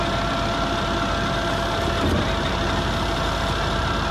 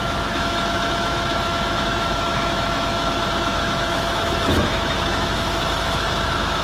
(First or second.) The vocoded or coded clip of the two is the second